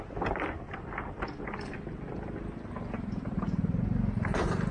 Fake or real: real